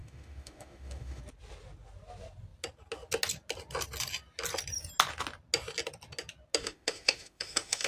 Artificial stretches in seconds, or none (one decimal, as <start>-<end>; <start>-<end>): 0.0-1.2; 6.6-7.9